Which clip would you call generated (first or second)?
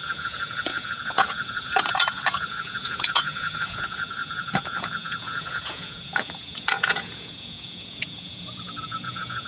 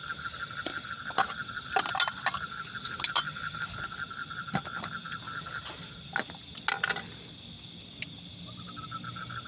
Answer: first